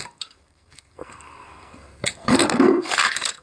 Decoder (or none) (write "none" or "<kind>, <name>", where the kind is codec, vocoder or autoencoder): codec, SNAC